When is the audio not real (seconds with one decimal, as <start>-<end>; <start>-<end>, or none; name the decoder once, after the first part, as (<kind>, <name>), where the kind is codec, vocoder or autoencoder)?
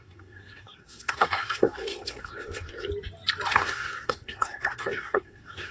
0.0-2.9 (codec, SNAC); 3.5-5.7